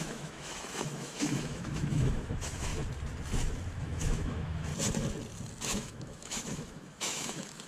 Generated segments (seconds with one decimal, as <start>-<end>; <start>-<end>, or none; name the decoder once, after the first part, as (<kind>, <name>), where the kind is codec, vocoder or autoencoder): 0.0-2.7 (autoencoder, DAC-VAE); 3.8-4.7; 5.7-7.7